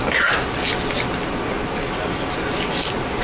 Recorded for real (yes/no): yes